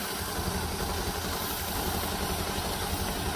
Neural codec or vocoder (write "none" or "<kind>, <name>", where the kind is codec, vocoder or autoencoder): none